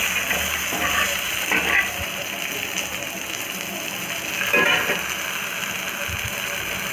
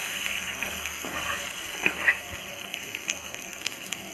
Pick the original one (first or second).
first